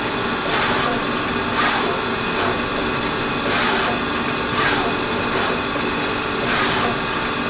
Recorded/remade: recorded